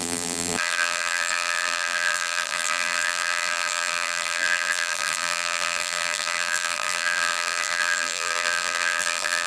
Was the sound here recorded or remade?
remade